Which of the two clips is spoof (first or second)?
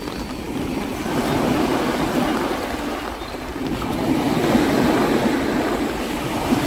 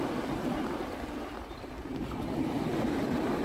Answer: second